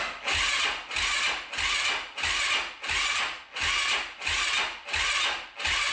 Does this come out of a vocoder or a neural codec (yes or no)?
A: no